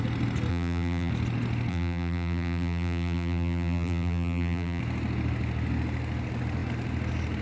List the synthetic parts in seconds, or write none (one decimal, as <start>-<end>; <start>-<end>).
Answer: 0.5-1.1; 1.7-4.8